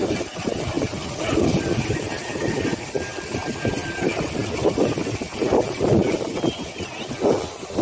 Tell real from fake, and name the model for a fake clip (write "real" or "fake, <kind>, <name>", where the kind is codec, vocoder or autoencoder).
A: real